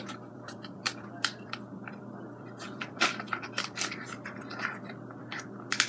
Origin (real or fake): fake